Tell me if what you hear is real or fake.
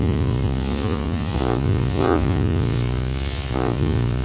fake